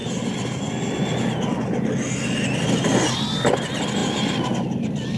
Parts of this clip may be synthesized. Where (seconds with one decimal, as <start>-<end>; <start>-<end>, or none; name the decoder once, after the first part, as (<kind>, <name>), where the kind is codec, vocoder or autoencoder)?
none